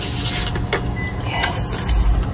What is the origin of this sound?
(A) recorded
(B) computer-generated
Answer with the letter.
A